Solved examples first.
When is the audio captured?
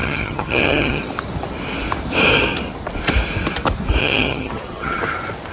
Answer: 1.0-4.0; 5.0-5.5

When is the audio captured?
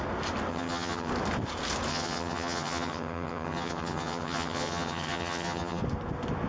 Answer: 0.0-0.5; 1.1-1.9; 5.8-6.5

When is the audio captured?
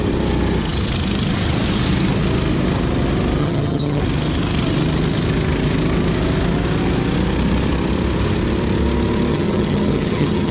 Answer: 0.0-3.4; 4.0-9.3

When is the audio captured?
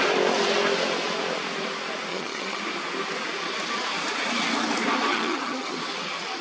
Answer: 0.0-2.1; 2.6-5.1; 5.8-6.4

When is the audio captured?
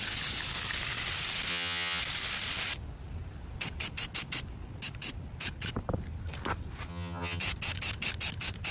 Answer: 0.0-1.5; 2.0-6.9; 7.4-8.7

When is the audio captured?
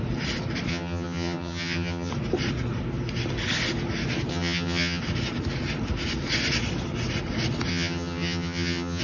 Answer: 0.0-0.7; 2.1-4.3; 5.0-7.7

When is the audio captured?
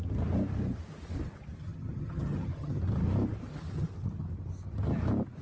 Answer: 0.0-1.6; 2.8-5.4